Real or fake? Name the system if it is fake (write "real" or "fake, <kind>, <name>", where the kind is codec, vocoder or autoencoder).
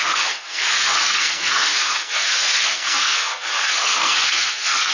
fake, codec, SNAC